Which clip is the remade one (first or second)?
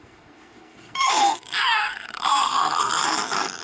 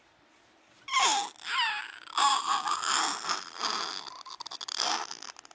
first